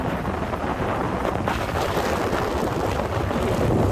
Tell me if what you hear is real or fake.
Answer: real